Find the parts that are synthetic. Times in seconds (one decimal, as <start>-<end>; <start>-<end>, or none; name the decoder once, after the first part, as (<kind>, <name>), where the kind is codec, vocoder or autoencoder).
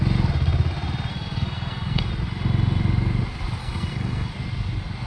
1.1-2.1 (codec, SNAC); 3.6-4.3